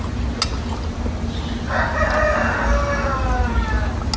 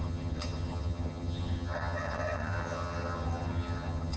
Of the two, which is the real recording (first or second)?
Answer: first